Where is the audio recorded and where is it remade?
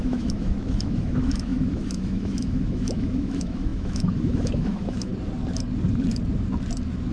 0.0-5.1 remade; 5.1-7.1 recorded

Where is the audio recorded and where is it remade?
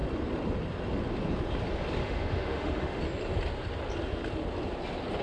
0.0-2.0 recorded; 2.0-3.0 remade; 3.0-5.2 recorded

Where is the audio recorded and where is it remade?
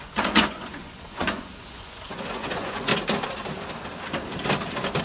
0.0-2.9 remade; 2.9-5.0 recorded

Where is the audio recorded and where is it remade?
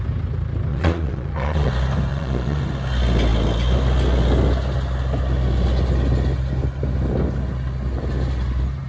0.0-0.7 recorded; 0.7-1.7 remade; 1.7-2.1 recorded; 2.1-2.6 remade; 2.6-8.9 recorded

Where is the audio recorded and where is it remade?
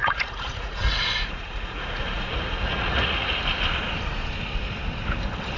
0.0-3.3 remade; 3.3-5.6 recorded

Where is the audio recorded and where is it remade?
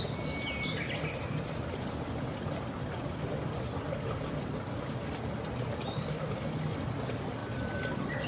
0.0-8.3 recorded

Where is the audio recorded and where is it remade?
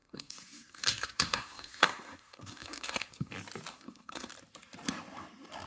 0.0-3.3 remade; 3.3-3.7 recorded; 3.7-4.3 remade; 4.3-5.7 recorded